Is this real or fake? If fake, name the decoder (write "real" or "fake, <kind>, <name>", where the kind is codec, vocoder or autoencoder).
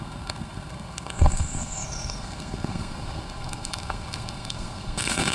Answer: fake, codec, SNAC